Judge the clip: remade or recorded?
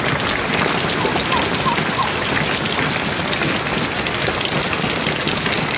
recorded